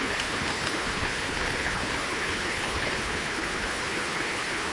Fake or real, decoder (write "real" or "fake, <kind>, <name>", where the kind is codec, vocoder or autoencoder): fake, codec, HILCodec